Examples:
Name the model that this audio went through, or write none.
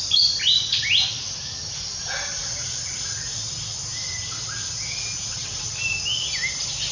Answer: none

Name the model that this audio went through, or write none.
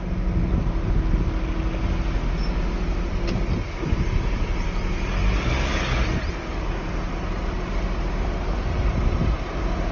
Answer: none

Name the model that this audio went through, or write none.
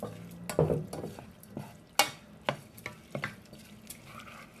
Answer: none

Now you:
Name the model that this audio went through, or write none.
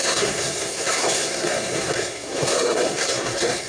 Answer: codec, SNAC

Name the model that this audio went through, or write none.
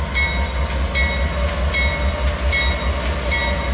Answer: none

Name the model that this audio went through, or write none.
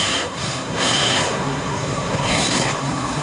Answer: codec, SNAC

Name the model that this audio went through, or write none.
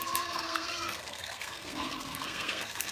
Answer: codec, SNAC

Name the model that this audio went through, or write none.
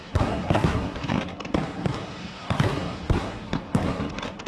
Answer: codec, SNAC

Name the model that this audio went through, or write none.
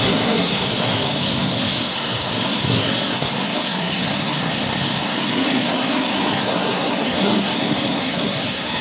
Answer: codec, SNAC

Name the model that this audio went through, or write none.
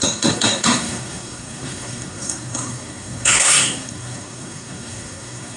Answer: codec, SNAC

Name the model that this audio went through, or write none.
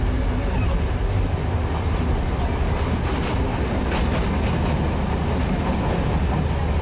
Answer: none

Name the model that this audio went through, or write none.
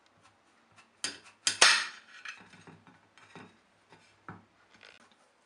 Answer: none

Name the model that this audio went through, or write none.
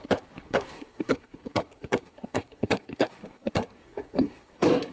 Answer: codec, SNAC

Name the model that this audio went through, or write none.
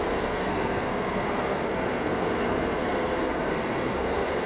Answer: codec, SNAC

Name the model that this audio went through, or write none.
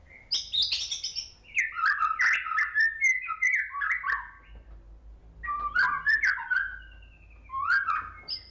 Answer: none